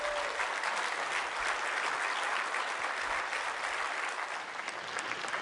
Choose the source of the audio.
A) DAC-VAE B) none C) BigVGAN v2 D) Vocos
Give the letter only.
B